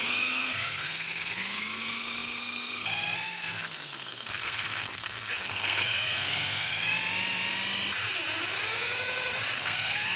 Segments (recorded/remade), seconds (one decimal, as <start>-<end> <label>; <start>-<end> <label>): 0.0-6.9 remade; 6.9-9.6 recorded; 9.6-10.2 remade